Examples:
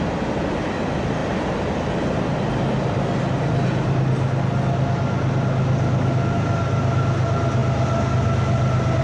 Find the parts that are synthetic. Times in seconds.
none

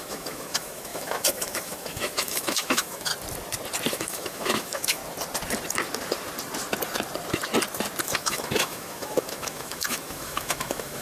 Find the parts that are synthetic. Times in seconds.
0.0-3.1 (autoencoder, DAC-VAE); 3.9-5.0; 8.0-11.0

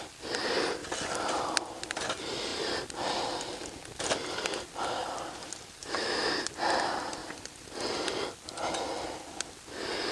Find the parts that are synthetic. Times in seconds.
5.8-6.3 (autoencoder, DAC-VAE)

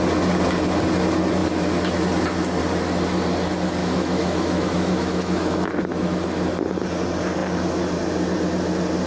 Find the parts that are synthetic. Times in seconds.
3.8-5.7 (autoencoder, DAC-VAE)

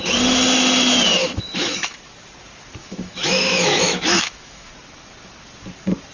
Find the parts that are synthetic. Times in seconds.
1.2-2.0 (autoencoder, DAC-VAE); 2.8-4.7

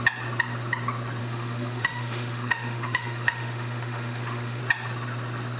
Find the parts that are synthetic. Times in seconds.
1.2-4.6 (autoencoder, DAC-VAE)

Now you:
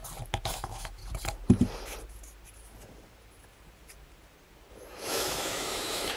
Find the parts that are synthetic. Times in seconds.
0.5-1.0 (autoencoder, DAC-VAE); 4.7-6.2